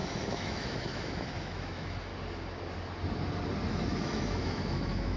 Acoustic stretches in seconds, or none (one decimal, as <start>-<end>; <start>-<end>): 2.1-3.7

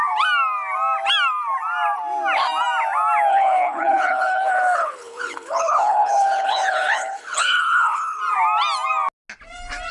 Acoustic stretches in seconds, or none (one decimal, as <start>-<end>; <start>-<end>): 0.0-3.3; 8.2-9.9

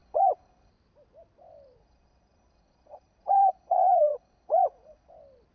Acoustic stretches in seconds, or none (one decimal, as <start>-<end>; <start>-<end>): 0.7-1.8; 5.1-5.5